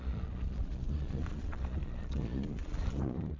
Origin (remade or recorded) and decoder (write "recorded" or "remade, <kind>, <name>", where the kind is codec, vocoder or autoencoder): remade, vocoder, Vocos